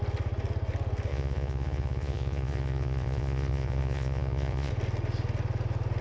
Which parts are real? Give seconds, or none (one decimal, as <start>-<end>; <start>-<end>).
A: 0.0-1.1; 4.7-6.0